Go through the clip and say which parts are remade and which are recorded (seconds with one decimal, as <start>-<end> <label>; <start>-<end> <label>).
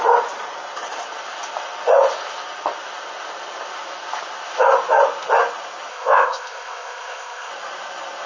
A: 0.0-5.9 recorded; 5.9-7.5 remade; 7.5-8.3 recorded